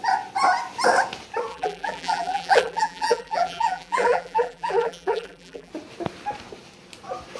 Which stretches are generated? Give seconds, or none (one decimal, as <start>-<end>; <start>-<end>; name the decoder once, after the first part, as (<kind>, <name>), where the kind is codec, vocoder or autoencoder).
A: 1.5-5.7 (vocoder, BigVGAN v2)